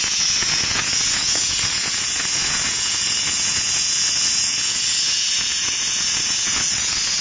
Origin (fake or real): fake